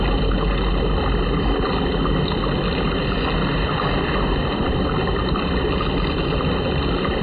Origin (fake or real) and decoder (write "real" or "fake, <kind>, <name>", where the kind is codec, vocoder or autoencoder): real